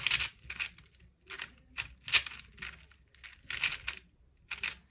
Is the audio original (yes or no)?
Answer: yes